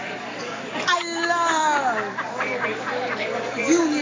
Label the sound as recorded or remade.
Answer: remade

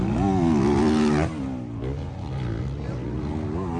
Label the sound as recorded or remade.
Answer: recorded